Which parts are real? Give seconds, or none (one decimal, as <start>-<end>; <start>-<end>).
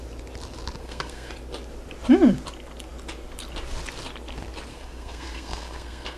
0.0-0.8; 1.3-4.7